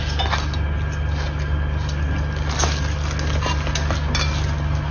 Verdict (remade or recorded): recorded